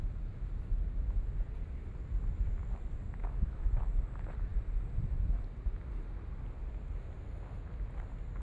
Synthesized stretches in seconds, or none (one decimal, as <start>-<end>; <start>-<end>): 3.2-3.8